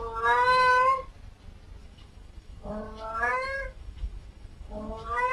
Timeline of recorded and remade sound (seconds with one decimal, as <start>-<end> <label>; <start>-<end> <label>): 0.0-1.8 recorded; 1.8-2.8 remade; 2.8-3.3 recorded; 3.3-5.3 remade